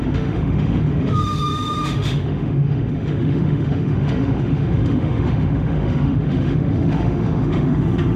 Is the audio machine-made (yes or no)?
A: yes